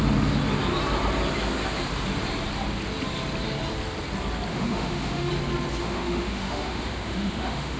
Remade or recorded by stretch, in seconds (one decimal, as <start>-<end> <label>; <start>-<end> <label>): 0.0-4.5 recorded; 4.5-5.3 remade; 5.3-5.8 recorded; 5.8-7.8 remade